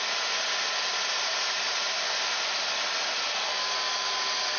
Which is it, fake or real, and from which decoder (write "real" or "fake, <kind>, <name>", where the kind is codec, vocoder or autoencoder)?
real